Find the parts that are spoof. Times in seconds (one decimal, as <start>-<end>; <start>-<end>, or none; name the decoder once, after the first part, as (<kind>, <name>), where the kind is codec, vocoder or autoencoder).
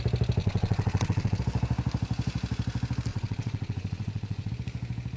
0.4-1.4 (vocoder, Vocos); 3.1-4.5